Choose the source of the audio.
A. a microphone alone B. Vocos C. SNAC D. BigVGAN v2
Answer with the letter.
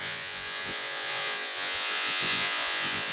B